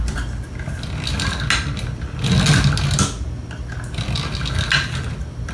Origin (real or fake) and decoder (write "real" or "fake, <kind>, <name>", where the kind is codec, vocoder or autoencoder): real